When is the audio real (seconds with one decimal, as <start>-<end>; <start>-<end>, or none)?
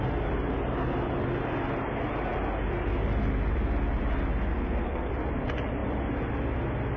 0.0-4.5; 5.1-7.0